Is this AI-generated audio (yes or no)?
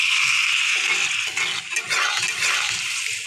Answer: no